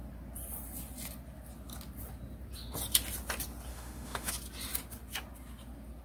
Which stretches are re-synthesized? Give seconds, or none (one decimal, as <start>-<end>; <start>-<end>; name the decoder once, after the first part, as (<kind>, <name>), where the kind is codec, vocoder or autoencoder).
3.7-4.3 (autoencoder, DAC-VAE)